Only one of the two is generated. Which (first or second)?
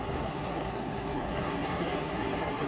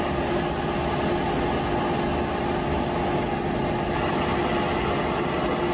first